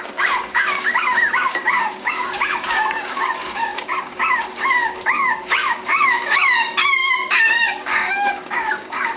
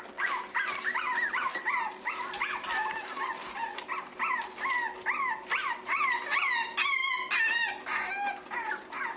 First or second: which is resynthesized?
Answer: first